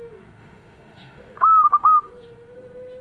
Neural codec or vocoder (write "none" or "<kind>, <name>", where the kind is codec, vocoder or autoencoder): autoencoder, DAC-VAE